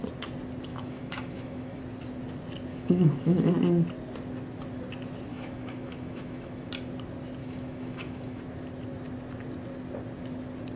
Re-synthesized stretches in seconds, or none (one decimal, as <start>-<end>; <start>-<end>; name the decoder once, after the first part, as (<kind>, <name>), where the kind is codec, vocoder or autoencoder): 0.7-1.8 (autoencoder, DAC-VAE); 2.7-3.5; 5.3-6.7; 7.4-8.4